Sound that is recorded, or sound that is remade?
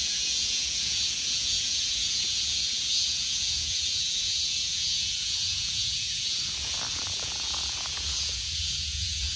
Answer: remade